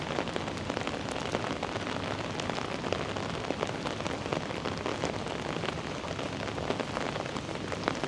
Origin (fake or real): real